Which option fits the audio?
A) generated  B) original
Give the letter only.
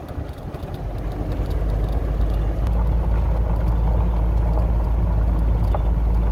B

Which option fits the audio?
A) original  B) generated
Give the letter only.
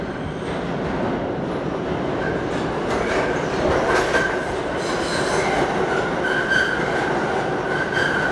A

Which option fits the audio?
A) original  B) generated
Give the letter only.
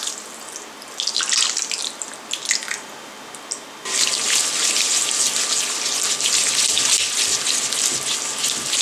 A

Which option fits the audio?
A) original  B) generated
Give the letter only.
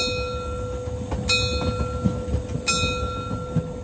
A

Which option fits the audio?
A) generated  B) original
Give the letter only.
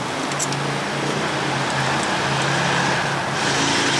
B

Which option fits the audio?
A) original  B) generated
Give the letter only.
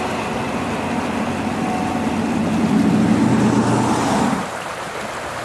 A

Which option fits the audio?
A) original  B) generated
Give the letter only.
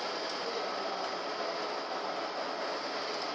A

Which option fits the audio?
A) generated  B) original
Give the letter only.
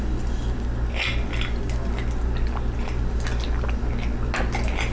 B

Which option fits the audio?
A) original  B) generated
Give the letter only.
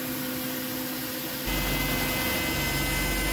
A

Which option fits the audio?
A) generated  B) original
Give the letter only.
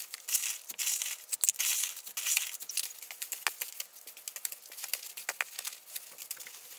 B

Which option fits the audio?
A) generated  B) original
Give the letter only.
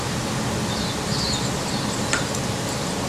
B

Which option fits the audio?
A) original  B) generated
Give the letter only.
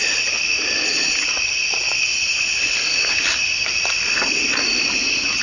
B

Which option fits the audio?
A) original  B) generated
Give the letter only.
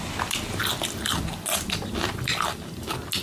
A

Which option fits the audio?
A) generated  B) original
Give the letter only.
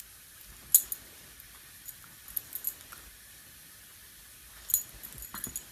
B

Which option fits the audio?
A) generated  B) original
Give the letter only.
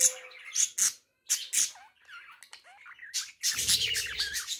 B